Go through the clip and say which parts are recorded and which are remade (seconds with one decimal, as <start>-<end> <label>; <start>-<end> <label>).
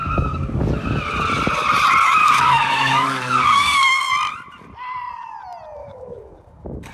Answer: 0.0-0.6 remade; 0.6-2.2 recorded; 2.2-4.1 remade; 4.1-5.8 recorded; 5.8-6.9 remade